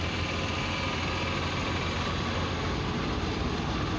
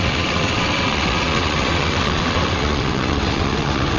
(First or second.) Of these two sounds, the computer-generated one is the second